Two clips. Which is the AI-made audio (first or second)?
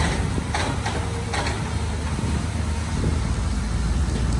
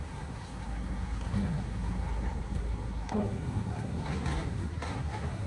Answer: second